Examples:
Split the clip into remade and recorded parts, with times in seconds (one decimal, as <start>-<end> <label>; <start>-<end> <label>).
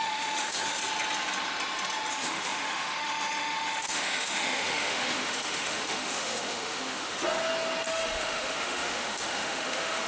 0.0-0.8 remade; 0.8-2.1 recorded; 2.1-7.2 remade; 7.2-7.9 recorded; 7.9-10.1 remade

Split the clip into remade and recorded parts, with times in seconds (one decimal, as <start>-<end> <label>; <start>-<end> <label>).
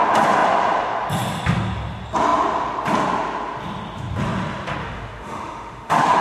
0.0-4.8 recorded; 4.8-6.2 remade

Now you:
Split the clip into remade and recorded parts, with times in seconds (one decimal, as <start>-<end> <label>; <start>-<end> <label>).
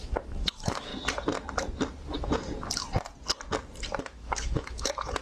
0.0-0.9 remade; 0.9-4.0 recorded; 4.0-5.2 remade